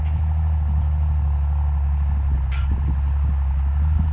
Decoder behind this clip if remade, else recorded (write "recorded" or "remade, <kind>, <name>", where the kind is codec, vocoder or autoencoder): recorded